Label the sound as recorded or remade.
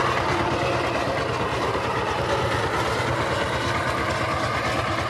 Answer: recorded